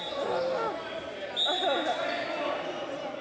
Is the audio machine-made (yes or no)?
no